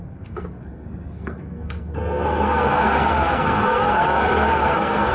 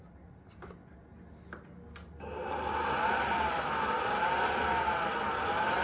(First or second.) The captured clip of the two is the second